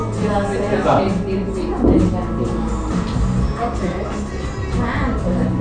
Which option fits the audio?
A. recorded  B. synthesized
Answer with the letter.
A